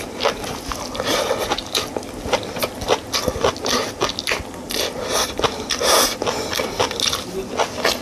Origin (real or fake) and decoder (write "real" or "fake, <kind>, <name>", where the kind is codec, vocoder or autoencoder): real